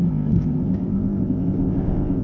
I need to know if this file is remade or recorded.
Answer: remade